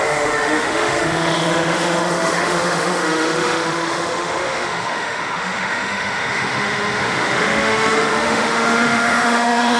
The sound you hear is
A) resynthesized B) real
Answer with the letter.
A